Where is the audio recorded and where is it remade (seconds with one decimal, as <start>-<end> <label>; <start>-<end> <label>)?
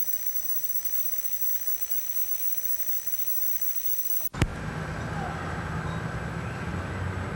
0.0-6.7 recorded; 6.7-7.4 remade